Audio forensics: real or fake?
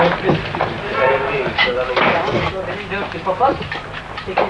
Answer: real